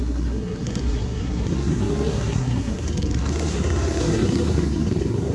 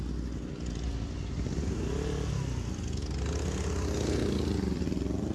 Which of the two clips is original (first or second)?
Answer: second